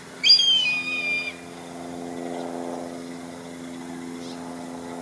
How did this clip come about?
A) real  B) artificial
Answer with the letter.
A